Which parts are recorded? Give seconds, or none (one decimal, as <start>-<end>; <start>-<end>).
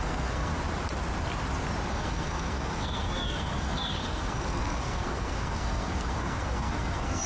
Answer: 0.5-1.9